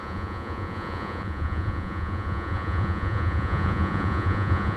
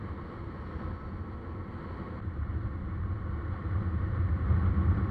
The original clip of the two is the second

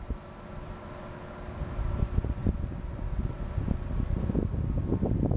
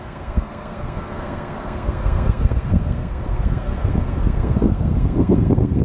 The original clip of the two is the first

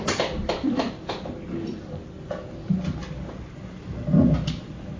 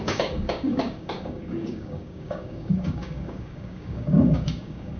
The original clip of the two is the first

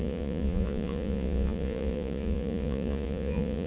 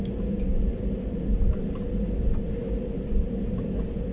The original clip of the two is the second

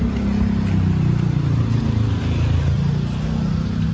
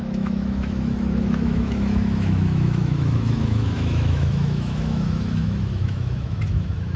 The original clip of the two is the first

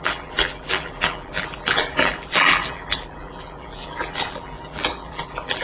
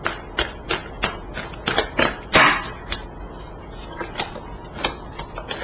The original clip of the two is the second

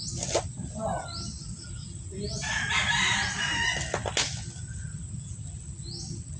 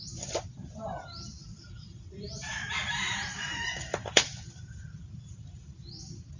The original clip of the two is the first